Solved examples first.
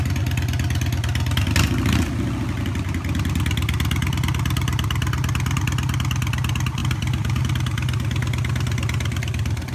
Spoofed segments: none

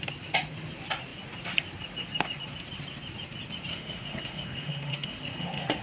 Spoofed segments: 3.7-5.8 (autoencoder, DAC-VAE)

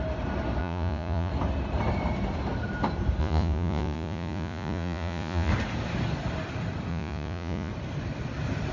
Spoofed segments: 0.6-1.3 (vocoder, Vocos); 3.2-5.5; 6.9-7.7

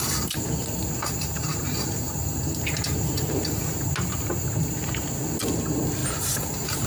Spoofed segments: none

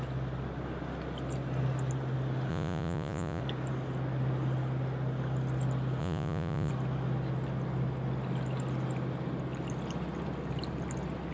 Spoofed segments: 2.5-3.4 (vocoder, Vocos); 6.0-6.7

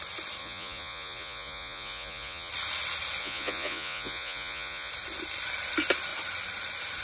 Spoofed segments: 0.4-2.5 (vocoder, Vocos); 3.2-4.9

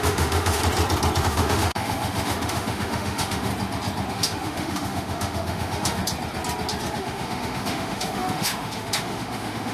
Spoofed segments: 0.0-0.6 (autoencoder, DAC-VAE); 1.2-3.5; 4.1-6.0; 6.9-9.7

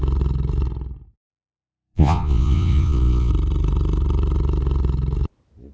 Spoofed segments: 1.3-3.3 (vocoder, Vocos)